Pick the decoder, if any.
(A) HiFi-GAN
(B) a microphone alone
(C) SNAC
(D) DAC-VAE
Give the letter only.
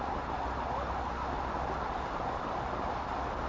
B